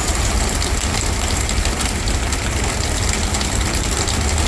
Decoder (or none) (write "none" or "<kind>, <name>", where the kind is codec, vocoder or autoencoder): none